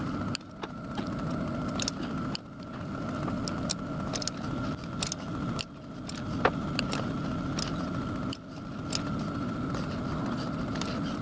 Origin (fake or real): real